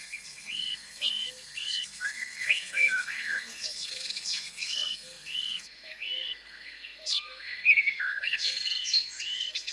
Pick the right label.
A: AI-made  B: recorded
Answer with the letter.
A